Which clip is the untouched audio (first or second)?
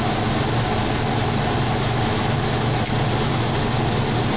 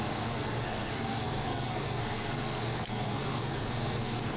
first